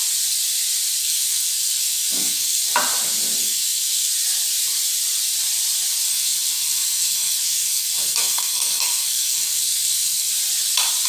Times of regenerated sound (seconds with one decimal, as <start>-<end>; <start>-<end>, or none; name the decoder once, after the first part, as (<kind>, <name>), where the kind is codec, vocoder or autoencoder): 1.0-2.6 (codec, SNAC); 3.4-4.1; 6.1-10.3